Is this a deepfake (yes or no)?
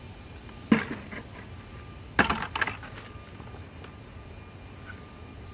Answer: no